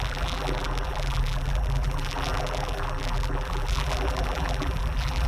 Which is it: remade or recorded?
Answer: remade